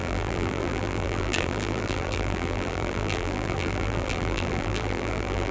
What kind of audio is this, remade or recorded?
remade